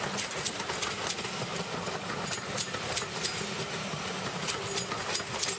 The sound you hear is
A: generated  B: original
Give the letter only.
B